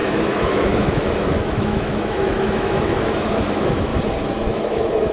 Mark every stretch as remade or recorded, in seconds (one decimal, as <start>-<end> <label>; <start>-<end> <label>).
0.0-3.9 remade; 3.9-4.5 recorded; 4.5-5.1 remade